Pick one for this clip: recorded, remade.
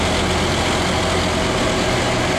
recorded